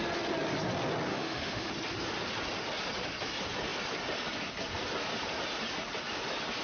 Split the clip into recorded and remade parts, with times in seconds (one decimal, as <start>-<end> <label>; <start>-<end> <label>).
0.0-1.1 recorded; 1.1-1.7 remade; 1.7-6.6 recorded